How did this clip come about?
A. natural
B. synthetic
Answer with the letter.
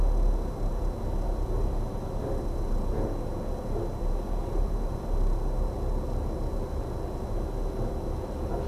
A